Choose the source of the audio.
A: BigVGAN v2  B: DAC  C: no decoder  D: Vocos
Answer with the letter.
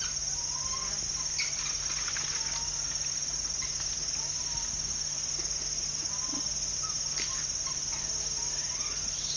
C